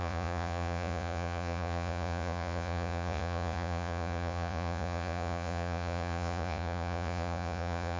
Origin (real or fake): fake